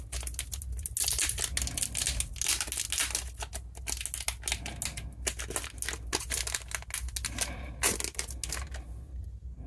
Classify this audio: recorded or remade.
recorded